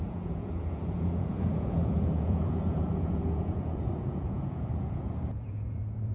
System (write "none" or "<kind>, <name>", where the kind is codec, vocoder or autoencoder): vocoder, Vocos